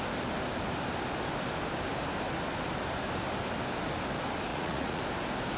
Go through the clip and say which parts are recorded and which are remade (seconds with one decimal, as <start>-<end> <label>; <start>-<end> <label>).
0.0-4.5 recorded; 4.5-5.0 remade; 5.0-5.6 recorded